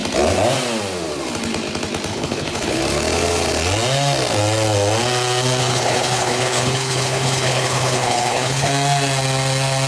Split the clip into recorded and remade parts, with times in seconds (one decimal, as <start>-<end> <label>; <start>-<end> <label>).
0.0-2.1 recorded; 2.1-2.8 remade; 2.8-5.6 recorded; 5.6-8.7 remade; 8.7-9.9 recorded